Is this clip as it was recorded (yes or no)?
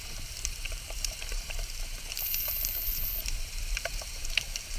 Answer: no